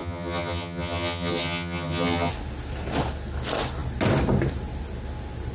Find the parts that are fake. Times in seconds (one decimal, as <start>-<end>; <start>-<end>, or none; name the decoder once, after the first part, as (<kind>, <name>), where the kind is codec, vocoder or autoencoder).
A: 0.0-2.3 (vocoder, HiFi-GAN)